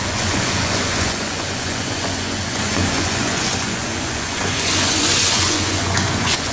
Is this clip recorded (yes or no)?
no